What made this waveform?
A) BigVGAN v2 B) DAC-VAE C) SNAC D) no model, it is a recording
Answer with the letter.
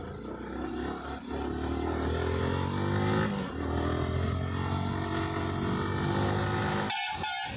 D